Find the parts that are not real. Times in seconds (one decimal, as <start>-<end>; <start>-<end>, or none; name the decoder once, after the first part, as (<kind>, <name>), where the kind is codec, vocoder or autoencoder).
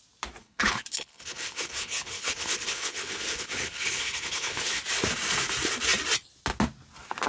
0.4-4.8 (codec, HILCodec)